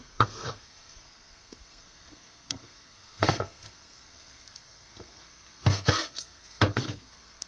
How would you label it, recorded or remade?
remade